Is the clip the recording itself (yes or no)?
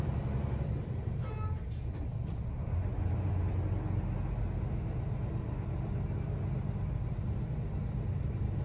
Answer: yes